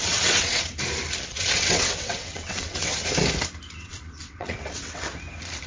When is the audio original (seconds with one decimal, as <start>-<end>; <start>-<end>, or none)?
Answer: 0.7-1.3; 3.0-3.7; 5.1-5.7